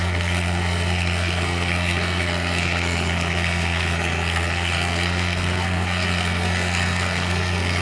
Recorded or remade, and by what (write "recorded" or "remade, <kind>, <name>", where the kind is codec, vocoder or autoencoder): remade, codec, SNAC